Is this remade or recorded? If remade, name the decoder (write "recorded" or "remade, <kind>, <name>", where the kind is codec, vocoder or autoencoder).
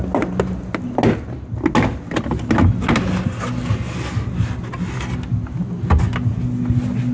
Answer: recorded